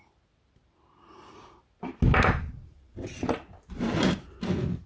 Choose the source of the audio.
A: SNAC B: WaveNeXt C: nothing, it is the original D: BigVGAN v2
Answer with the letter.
C